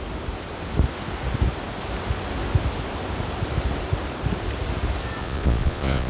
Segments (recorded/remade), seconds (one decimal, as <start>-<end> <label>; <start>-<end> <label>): 0.0-5.2 recorded; 5.2-6.1 remade